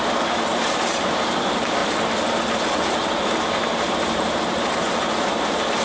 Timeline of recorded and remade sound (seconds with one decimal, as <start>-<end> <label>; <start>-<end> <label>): 0.0-1.8 remade; 1.8-3.3 recorded; 3.3-5.8 remade